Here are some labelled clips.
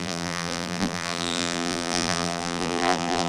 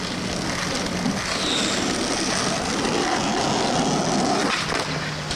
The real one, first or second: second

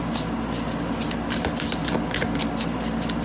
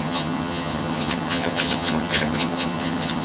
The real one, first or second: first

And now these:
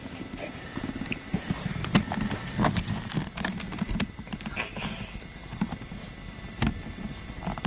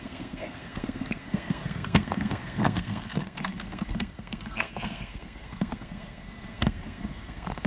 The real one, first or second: first